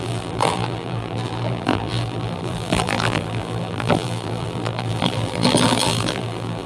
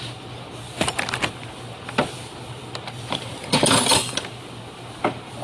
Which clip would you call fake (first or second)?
first